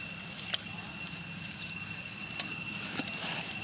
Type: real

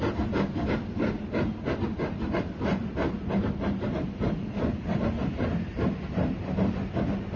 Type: real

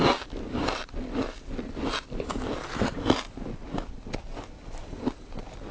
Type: real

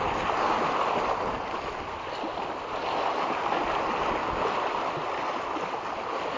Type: real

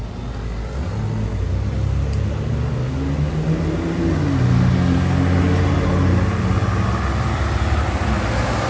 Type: real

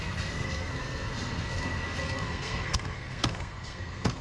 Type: fake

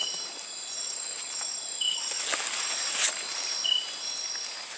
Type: real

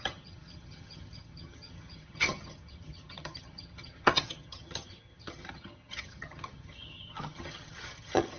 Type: fake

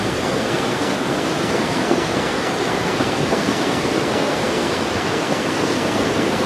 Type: fake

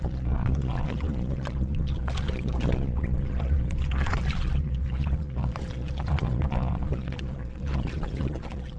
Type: fake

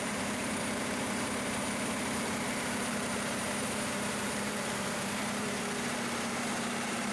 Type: fake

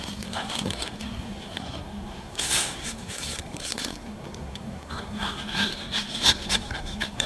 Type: fake